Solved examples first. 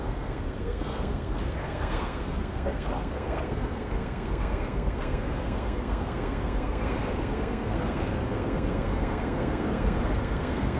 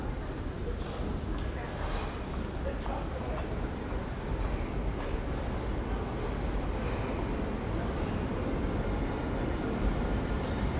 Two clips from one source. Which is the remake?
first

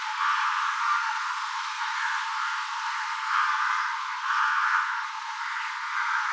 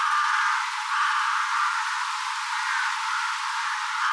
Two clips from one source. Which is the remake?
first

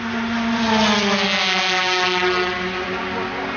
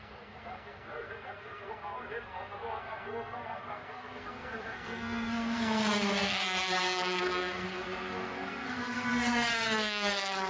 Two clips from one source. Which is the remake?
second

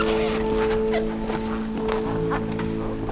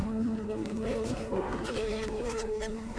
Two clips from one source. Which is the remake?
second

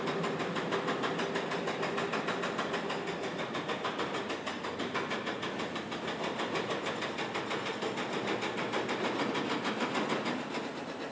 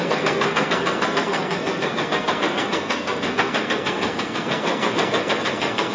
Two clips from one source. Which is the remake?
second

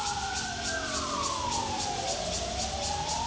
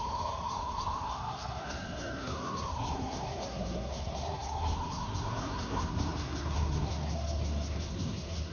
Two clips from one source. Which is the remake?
second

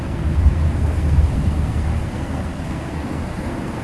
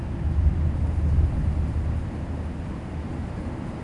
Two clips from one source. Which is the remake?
first